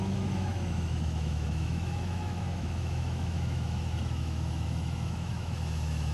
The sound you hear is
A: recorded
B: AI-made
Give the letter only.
B